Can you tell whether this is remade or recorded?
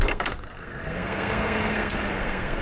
remade